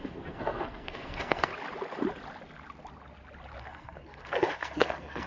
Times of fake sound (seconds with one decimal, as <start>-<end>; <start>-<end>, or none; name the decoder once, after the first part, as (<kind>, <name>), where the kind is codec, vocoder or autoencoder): 0.0-1.5 (codec, SNAC); 3.6-5.3